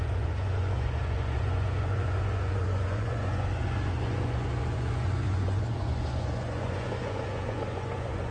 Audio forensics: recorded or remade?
remade